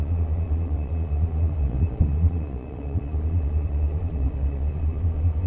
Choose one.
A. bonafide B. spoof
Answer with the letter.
B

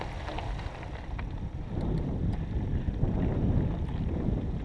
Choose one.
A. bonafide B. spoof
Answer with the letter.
A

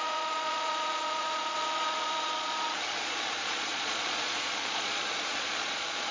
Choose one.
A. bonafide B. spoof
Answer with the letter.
B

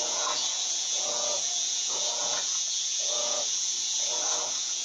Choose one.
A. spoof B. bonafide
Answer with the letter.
A